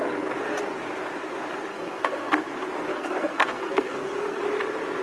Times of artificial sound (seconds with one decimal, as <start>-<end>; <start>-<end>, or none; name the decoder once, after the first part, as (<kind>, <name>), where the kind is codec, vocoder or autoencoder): 1.7-2.5 (codec, SNAC); 2.9-4.4